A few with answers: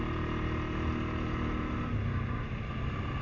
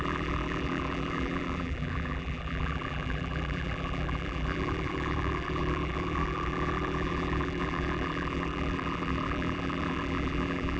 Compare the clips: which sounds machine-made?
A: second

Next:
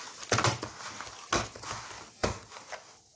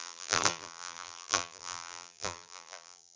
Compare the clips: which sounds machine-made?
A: second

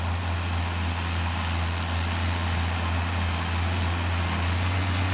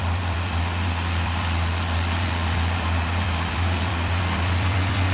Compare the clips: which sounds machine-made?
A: second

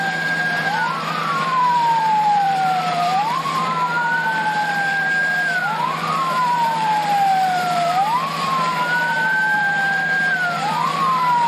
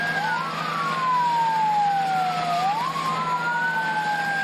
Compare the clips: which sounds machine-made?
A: first